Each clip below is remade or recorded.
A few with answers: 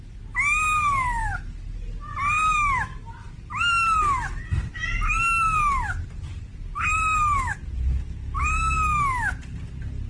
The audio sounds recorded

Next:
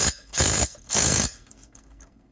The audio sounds remade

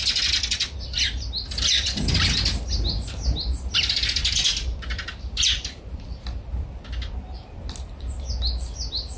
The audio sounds recorded